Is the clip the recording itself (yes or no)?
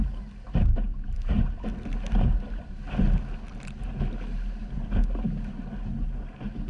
yes